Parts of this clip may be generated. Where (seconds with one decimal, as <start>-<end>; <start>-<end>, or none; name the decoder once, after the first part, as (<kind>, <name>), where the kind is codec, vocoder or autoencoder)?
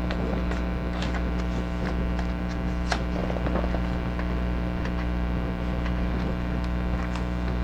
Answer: 3.2-4.8 (vocoder, BigVGAN v2)